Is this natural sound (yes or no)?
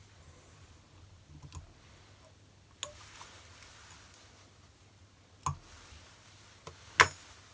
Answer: yes